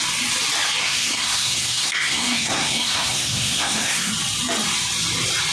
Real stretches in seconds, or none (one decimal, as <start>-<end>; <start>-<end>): 0.0-0.8; 4.1-5.5